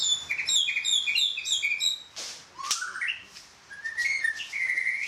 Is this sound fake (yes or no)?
no